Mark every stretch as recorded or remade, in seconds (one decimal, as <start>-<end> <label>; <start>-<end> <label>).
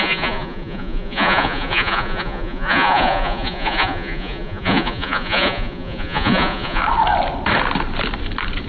0.0-6.8 remade; 6.8-8.7 recorded